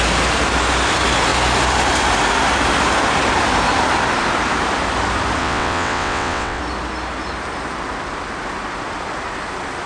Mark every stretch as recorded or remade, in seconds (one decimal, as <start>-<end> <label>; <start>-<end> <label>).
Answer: 0.0-5.4 recorded; 5.4-6.6 remade; 6.6-9.9 recorded